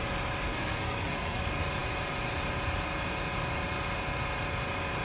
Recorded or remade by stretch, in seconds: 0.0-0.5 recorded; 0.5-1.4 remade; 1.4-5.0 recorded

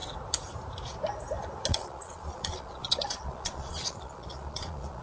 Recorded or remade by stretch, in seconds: 0.0-1.7 recorded; 1.7-5.0 remade

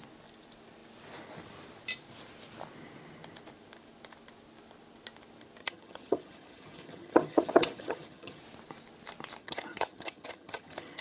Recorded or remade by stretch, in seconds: 0.0-5.6 recorded; 5.6-8.4 remade; 8.4-9.4 recorded; 9.4-11.0 remade